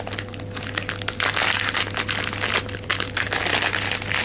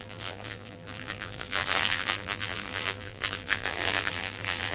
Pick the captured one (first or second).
first